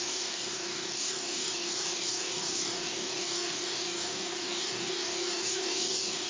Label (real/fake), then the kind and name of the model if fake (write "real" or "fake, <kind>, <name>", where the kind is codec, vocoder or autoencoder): fake, codec, DAC